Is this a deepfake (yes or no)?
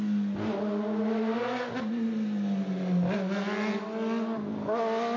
no